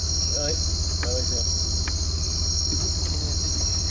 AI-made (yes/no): yes